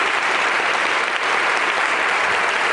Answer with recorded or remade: remade